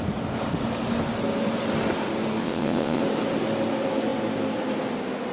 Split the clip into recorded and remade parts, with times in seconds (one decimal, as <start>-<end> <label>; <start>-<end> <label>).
0.0-2.4 recorded; 2.4-3.0 remade; 3.0-5.3 recorded

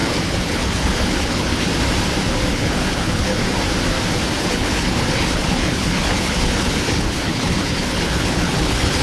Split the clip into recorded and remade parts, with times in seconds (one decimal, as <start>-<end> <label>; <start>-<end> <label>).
0.0-1.7 remade; 1.7-2.5 recorded; 2.5-3.4 remade; 3.4-4.4 recorded; 4.4-9.0 remade

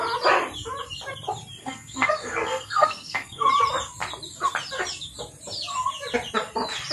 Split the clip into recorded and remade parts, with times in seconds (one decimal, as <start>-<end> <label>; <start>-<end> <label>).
0.0-1.6 recorded; 1.6-3.5 remade; 3.5-6.9 recorded

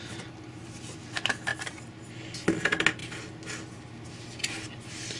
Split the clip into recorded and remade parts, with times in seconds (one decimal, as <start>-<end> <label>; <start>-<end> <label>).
0.0-5.2 recorded

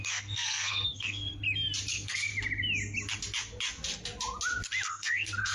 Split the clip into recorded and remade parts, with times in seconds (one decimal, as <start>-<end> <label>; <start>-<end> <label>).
0.0-1.3 remade; 1.3-1.9 recorded; 1.9-2.3 remade; 2.3-4.9 recorded; 4.9-5.5 remade

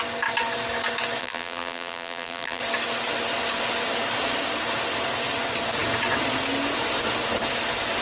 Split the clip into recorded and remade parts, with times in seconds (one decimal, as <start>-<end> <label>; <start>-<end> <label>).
0.0-1.2 recorded; 1.2-2.6 remade; 2.6-8.0 recorded

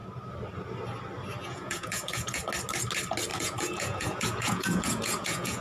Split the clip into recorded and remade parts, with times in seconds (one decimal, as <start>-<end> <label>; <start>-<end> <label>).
0.0-1.4 recorded; 1.4-2.4 remade; 2.4-3.3 recorded; 3.3-5.6 remade